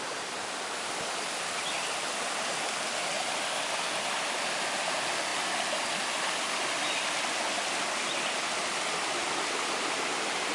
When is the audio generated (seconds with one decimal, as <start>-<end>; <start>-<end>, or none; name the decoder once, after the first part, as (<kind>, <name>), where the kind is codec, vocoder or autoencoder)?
none

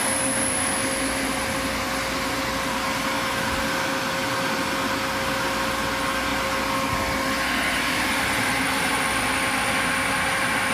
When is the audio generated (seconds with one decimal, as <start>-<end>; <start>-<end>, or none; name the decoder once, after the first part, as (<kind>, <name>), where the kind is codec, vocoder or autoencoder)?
none

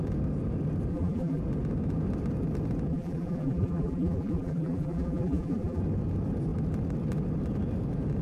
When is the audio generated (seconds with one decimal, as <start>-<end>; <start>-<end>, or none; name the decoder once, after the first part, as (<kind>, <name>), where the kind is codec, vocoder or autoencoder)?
0.9-1.4 (vocoder, BigVGAN v2); 2.9-5.8

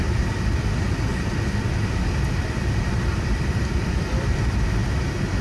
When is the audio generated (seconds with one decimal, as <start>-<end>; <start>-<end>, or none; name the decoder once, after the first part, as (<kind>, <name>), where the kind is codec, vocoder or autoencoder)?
0.0-1.1 (vocoder, BigVGAN v2); 2.9-4.8

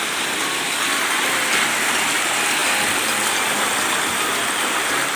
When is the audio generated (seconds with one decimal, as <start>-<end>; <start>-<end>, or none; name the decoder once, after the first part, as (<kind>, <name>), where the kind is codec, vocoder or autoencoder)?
none

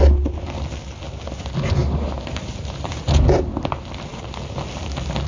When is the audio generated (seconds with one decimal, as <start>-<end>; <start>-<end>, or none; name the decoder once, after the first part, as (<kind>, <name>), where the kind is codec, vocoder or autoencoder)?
1.8-3.0 (vocoder, BigVGAN v2)

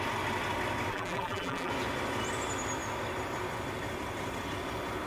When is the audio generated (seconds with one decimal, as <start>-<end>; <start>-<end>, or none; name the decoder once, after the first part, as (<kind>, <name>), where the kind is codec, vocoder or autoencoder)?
0.9-1.7 (vocoder, BigVGAN v2)